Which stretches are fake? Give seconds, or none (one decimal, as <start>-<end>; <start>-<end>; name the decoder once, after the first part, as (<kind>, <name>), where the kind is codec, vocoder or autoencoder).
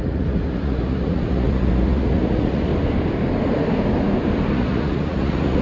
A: 0.0-2.7 (vocoder, Vocos); 4.5-5.6